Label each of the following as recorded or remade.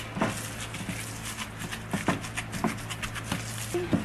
recorded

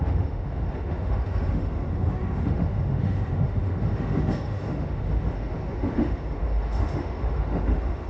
remade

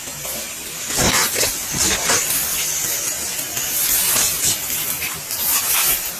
recorded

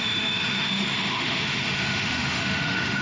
remade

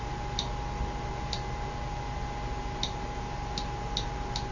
recorded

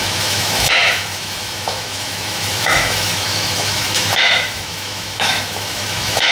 remade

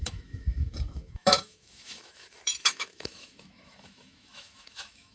remade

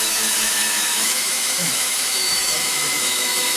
remade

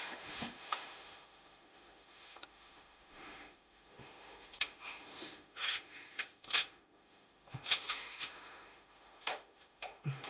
remade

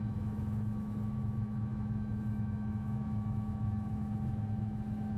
remade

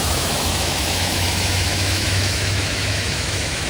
remade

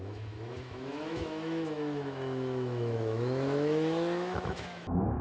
remade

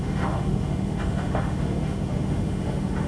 remade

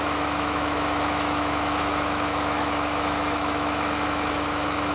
remade